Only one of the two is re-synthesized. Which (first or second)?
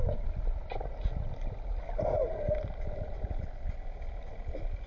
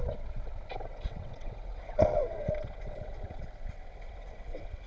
second